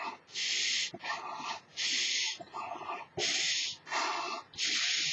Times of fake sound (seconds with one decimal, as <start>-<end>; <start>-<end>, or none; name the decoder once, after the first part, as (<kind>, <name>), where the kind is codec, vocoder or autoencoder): 0.0-5.1 (vocoder, BigVGAN v2)